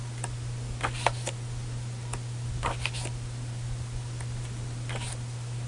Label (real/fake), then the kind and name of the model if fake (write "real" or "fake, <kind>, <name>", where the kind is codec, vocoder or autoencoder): real